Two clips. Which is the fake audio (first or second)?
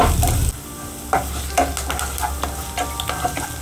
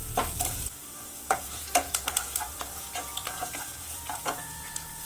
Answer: second